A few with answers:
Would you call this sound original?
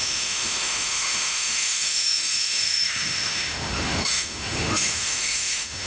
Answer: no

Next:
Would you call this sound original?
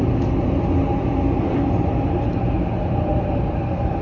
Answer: yes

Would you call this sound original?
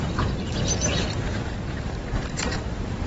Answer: no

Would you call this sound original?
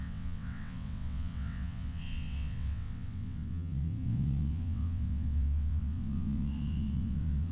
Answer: no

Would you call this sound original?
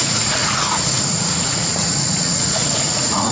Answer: no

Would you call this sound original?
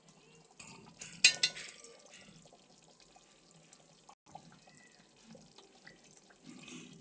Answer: yes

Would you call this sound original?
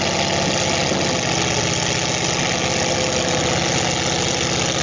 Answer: yes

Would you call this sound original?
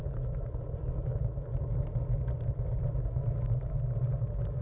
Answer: yes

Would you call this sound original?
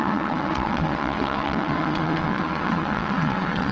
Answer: no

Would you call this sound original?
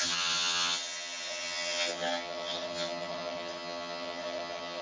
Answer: no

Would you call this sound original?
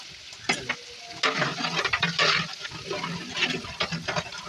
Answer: yes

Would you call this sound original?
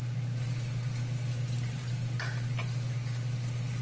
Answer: yes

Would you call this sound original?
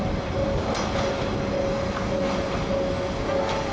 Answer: yes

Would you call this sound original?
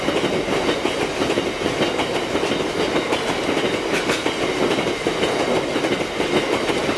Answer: yes